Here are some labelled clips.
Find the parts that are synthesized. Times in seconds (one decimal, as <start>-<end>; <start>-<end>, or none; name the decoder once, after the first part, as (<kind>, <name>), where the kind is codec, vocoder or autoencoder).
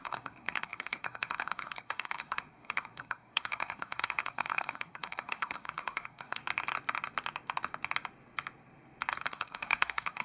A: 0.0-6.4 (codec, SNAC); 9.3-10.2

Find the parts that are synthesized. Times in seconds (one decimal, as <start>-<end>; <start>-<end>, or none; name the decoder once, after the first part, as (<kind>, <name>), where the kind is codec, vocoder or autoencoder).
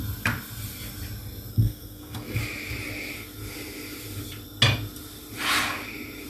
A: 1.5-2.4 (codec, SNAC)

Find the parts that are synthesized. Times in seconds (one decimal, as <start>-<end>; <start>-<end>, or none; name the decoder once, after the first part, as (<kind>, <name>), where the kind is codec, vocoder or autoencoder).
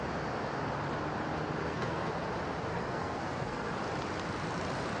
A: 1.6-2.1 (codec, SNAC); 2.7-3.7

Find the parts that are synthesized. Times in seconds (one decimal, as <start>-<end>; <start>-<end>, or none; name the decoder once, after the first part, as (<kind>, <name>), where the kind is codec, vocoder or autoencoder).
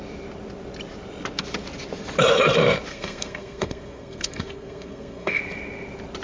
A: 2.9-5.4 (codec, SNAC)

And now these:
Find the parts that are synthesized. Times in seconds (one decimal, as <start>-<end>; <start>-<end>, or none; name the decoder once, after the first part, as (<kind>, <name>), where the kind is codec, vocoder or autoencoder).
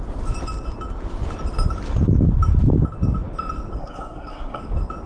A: 3.8-4.6 (codec, SNAC)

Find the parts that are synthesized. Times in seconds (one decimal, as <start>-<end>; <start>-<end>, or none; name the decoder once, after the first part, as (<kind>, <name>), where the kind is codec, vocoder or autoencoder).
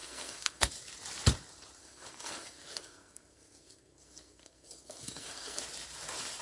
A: 0.0-0.7 (codec, SNAC); 1.8-5.6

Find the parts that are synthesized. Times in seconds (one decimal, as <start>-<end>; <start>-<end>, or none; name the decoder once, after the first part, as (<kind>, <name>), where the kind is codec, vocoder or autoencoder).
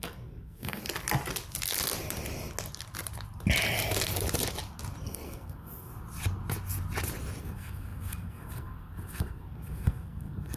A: 0.0-0.8 (codec, SNAC); 5.0-5.9; 7.4-10.6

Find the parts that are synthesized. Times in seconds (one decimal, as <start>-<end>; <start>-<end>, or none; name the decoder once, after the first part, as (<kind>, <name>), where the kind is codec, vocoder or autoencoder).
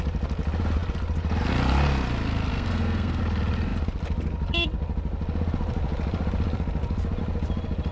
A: 2.5-3.2 (codec, SNAC)